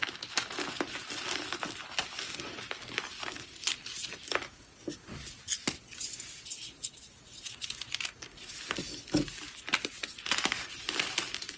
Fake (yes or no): no